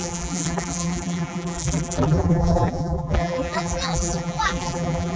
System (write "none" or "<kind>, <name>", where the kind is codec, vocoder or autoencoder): vocoder, BigVGAN v2